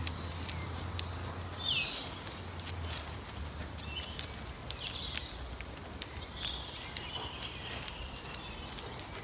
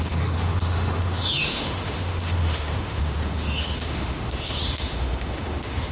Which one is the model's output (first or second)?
second